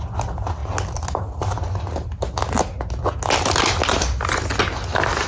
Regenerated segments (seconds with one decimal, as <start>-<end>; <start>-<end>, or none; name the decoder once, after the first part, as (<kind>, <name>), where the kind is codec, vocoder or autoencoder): none